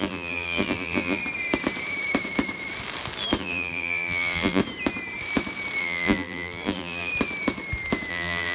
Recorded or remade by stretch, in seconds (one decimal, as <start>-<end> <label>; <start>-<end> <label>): 0.0-1.2 remade; 1.2-3.4 recorded; 3.4-4.6 remade; 4.6-5.8 recorded; 5.8-7.1 remade; 7.1-8.1 recorded; 8.1-8.5 remade